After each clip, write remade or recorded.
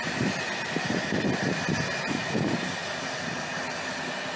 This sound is recorded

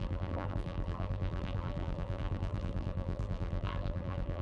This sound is remade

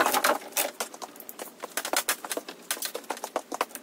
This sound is recorded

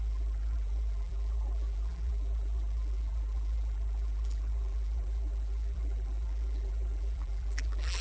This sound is remade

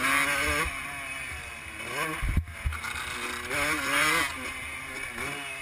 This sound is recorded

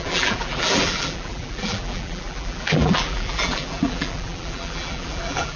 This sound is remade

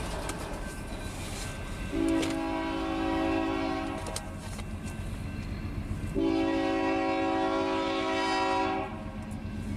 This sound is recorded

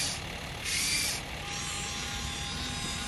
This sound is recorded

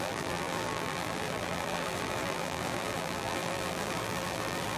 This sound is remade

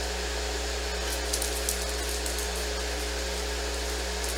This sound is recorded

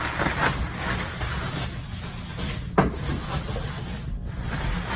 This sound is recorded